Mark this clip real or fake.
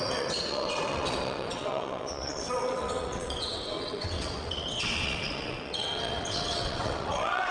fake